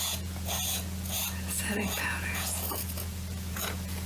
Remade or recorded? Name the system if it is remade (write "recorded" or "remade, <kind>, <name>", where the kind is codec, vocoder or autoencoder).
remade, vocoder, Vocos